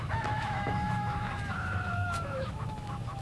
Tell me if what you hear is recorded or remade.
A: remade